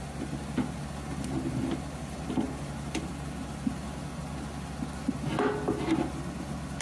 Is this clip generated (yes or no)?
no